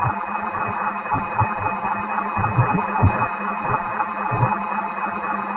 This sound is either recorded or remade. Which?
remade